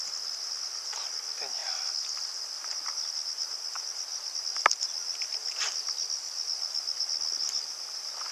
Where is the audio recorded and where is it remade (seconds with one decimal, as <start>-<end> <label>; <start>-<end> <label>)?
0.0-8.3 recorded